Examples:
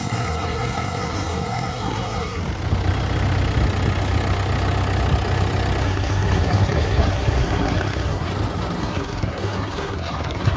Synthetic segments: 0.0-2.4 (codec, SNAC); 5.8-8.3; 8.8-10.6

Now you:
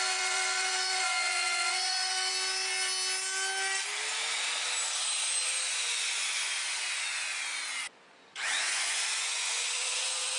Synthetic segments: 0.0-2.3 (vocoder, Vocos); 5.7-10.4

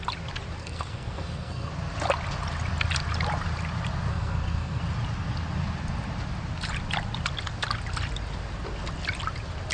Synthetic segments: 0.6-1.7 (codec, SNAC); 4.1-4.8

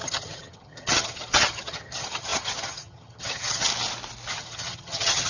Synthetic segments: 0.0-3.7 (vocoder, HiFi-GAN); 4.3-5.3